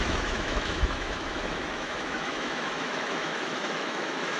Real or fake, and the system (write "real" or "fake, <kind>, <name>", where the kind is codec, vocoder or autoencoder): fake, autoencoder, DAC-VAE